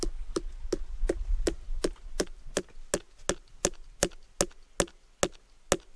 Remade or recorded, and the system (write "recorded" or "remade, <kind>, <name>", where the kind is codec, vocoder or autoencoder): recorded